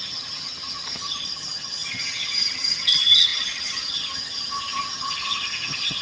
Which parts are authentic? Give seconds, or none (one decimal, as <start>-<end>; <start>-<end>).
none